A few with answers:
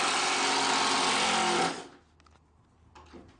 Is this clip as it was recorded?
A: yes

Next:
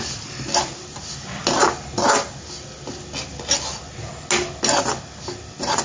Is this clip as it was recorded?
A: yes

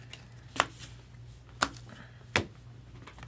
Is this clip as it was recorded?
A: yes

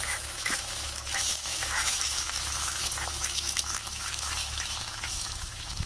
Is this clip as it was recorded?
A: no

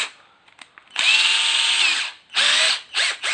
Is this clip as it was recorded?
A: yes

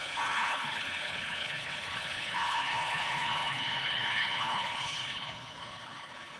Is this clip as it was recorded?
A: no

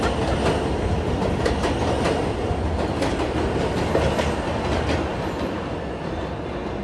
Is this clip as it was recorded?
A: yes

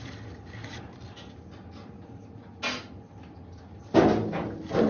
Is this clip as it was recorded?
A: yes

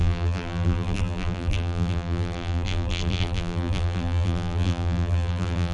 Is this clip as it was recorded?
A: no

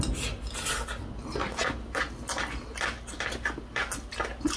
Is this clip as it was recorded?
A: yes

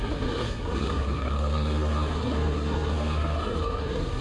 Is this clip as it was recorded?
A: no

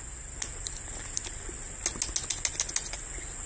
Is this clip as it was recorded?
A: yes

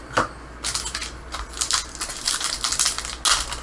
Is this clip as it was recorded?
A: yes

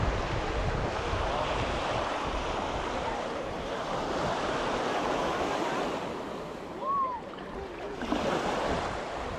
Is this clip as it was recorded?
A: yes